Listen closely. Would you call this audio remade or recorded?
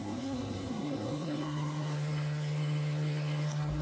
remade